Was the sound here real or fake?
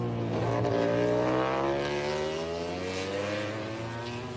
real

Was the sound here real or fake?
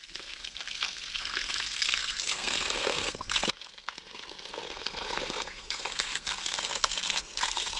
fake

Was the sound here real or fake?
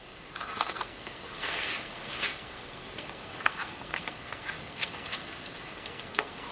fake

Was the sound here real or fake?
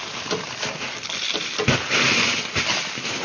real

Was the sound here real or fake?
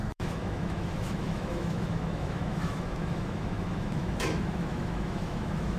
fake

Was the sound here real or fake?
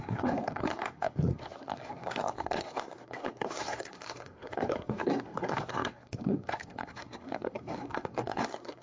fake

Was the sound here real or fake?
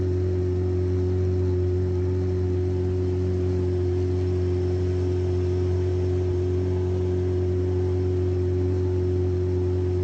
real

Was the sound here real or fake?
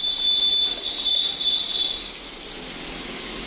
real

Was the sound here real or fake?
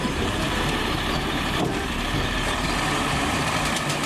fake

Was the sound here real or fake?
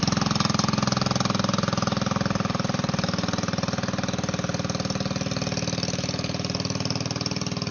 real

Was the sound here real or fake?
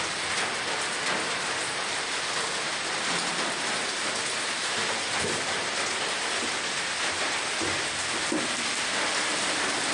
real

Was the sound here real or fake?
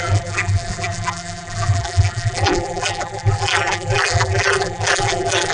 fake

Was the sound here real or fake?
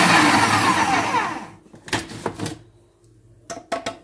real